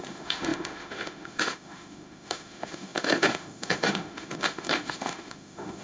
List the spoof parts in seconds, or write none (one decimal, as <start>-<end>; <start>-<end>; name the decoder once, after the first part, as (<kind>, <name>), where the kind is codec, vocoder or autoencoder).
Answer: 0.0-5.8 (autoencoder, DAC-VAE)

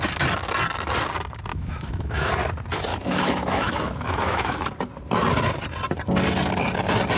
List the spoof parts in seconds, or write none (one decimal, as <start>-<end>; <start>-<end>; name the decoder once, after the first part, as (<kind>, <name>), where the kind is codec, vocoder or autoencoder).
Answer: 1.5-2.3 (autoencoder, DAC-VAE); 2.9-4.7

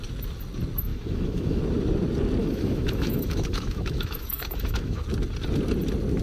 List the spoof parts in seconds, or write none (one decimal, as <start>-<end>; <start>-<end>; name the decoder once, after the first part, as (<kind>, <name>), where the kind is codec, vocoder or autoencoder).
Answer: 0.9-1.6 (autoencoder, DAC-VAE); 2.4-5.0

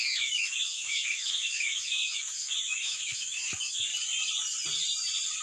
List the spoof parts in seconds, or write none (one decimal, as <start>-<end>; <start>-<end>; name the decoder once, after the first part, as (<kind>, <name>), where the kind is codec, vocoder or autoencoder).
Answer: 0.0-3.9 (autoencoder, DAC-VAE)

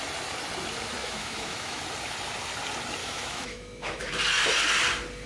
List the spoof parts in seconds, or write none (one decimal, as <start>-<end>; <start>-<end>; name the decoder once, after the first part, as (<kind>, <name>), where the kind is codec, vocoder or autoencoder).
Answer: 1.0-1.8 (autoencoder, DAC-VAE); 3.0-4.1